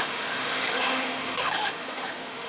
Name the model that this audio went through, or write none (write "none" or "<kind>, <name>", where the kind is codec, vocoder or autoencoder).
autoencoder, DAC-VAE